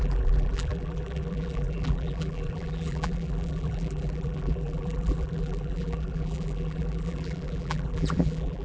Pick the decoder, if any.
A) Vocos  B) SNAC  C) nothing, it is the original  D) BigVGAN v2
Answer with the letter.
D